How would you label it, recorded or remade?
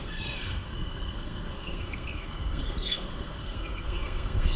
remade